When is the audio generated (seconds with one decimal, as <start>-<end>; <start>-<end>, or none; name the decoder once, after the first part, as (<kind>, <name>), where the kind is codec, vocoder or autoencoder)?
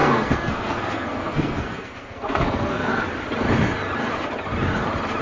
0.0-2.9 (codec, SNAC)